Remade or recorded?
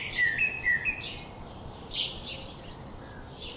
recorded